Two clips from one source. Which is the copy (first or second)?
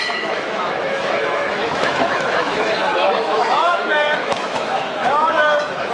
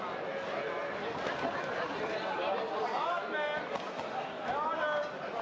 first